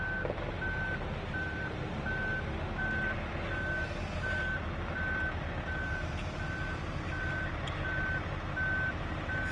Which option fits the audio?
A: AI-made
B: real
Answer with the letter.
B